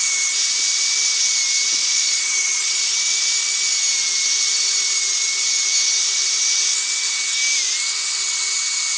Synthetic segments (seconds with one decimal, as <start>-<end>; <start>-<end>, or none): 1.8-2.8

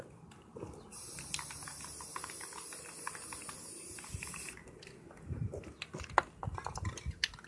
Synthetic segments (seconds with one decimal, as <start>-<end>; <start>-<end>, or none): none

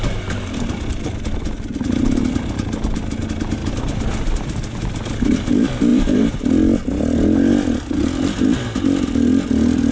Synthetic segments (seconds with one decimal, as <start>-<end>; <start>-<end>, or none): 5.9-6.4